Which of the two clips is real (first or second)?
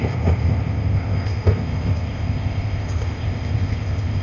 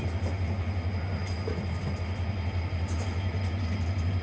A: second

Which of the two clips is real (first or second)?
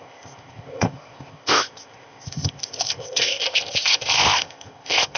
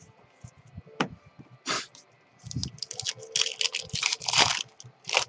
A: second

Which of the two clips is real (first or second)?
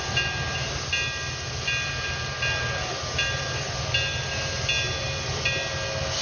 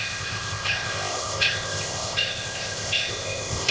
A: first